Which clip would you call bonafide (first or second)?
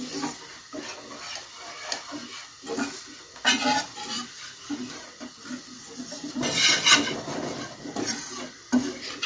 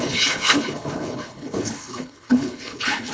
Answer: first